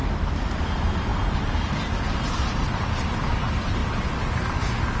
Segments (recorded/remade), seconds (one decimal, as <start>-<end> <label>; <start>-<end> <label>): 0.0-0.6 recorded; 0.6-3.8 remade; 3.8-5.0 recorded